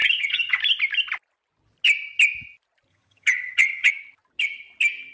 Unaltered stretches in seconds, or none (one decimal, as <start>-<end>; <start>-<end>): 0.6-2.9; 3.9-5.1